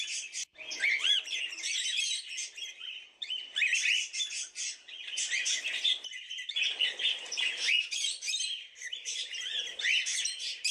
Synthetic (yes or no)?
yes